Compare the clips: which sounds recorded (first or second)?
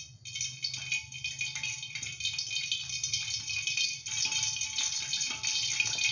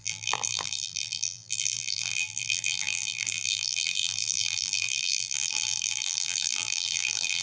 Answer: first